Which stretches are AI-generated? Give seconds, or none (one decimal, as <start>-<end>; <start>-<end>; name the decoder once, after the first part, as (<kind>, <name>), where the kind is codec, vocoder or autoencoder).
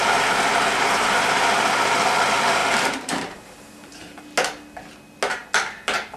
0.5-1.4 (vocoder, BigVGAN v2); 2.6-4.2